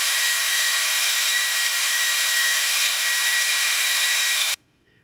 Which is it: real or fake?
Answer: fake